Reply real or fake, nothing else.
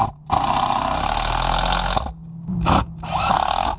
real